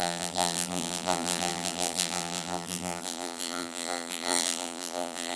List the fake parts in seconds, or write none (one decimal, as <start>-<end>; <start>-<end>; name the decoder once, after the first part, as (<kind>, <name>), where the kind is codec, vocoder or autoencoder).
0.0-5.4 (vocoder, BigVGAN v2)